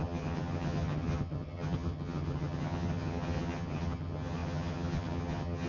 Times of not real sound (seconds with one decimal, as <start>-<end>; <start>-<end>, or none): 0.0-5.7